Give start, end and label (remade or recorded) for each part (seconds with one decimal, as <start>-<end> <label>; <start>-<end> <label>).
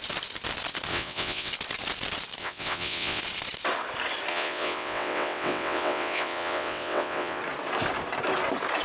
0.0-0.9 recorded; 0.9-1.5 remade; 1.5-2.4 recorded; 2.4-3.2 remade; 3.2-4.3 recorded; 4.3-7.4 remade; 7.4-8.8 recorded